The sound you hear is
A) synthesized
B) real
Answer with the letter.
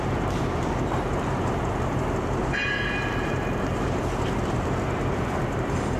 A